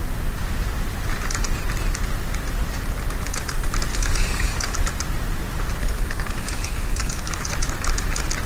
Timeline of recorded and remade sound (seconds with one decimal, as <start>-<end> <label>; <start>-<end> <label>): 0.0-3.9 recorded; 3.9-4.9 remade; 4.9-5.8 recorded; 5.8-7.5 remade; 7.5-8.5 recorded